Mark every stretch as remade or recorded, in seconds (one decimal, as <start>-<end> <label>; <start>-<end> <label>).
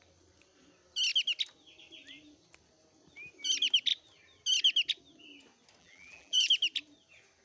0.0-5.8 recorded; 5.8-6.5 remade; 6.5-7.4 recorded